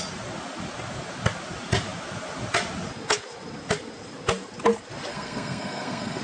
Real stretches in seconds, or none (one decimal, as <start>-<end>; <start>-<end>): 0.0-5.1